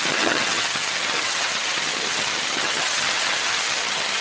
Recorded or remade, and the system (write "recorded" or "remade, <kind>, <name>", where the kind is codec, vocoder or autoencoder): remade, vocoder, HiFi-GAN